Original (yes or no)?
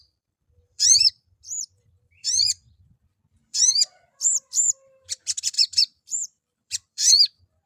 no